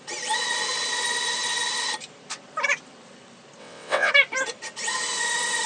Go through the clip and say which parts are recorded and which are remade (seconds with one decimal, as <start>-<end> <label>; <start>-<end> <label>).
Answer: 0.0-3.6 recorded; 3.6-4.1 remade; 4.1-5.7 recorded